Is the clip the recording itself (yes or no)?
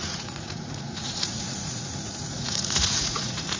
no